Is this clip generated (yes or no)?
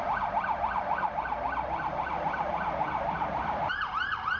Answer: no